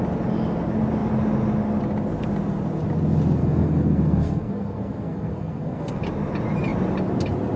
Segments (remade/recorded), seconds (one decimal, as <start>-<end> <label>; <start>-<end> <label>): 0.0-3.4 recorded; 3.4-6.0 remade; 6.0-7.6 recorded